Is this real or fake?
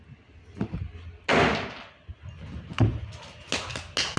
real